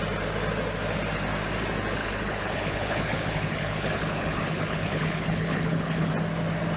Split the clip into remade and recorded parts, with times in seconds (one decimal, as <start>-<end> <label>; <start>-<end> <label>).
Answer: 0.0-2.0 recorded; 2.0-6.1 remade; 6.1-6.8 recorded